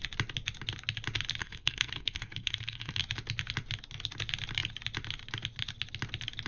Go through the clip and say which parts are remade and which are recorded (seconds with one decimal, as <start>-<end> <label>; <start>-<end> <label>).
0.0-1.4 recorded; 1.4-3.0 remade; 3.0-6.5 recorded

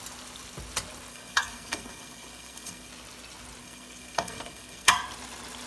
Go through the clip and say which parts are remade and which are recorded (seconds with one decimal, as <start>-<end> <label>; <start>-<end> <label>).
0.0-1.1 recorded; 1.1-2.9 remade; 2.9-3.6 recorded; 3.6-4.9 remade; 4.9-5.7 recorded

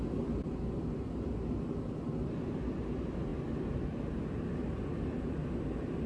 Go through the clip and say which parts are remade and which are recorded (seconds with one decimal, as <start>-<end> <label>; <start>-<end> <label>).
0.0-6.1 recorded

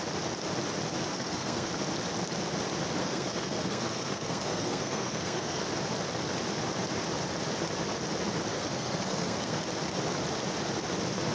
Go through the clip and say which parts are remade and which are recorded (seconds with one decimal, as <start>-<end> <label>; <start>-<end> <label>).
0.0-1.1 recorded; 1.1-1.7 remade; 1.7-3.0 recorded; 3.0-5.7 remade; 5.7-8.5 recorded; 8.5-9.6 remade; 9.6-11.3 recorded

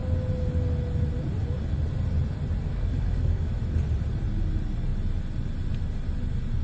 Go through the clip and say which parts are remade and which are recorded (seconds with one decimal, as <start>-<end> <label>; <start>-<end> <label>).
0.0-2.7 recorded; 2.7-3.5 remade; 3.5-6.6 recorded

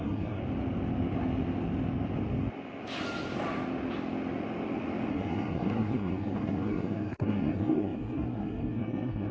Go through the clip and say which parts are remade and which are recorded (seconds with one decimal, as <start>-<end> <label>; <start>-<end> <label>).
0.0-0.4 remade; 0.4-5.1 recorded; 5.1-9.3 remade